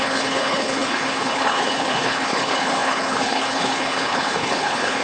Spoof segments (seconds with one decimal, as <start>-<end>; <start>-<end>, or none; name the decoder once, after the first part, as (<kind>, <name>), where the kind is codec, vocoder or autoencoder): 0.0-5.0 (codec, HILCodec)